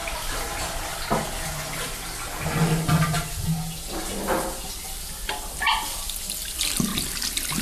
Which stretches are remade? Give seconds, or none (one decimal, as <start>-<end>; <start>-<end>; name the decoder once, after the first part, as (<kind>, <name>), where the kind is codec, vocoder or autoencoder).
none